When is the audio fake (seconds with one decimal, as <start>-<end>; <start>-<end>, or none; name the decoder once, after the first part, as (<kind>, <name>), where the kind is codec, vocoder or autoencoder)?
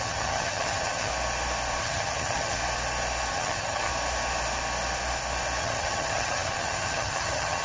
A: 0.0-1.1 (vocoder, HiFi-GAN); 1.8-2.6; 3.3-3.9; 5.6-7.6